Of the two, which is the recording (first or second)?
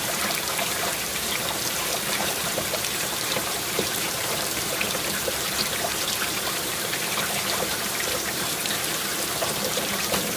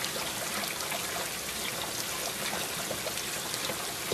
second